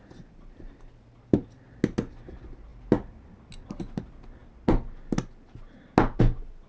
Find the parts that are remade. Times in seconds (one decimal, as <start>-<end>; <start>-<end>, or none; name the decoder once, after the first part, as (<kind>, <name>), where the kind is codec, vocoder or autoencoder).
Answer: none